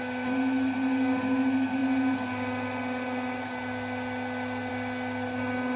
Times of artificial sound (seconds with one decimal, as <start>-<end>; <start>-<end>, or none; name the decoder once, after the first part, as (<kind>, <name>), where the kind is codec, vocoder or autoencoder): none